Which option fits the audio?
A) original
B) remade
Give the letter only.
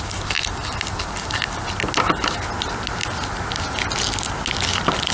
A